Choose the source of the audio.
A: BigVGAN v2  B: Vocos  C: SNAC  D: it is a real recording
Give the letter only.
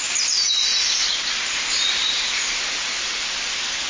D